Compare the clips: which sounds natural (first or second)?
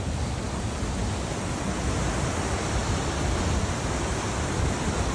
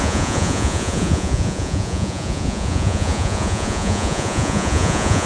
first